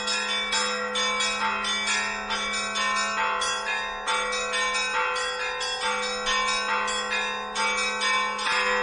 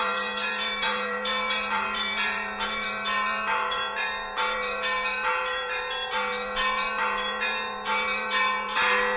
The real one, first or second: first